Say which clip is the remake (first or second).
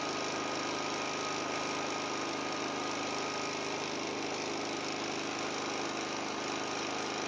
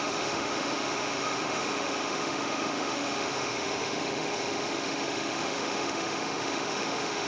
second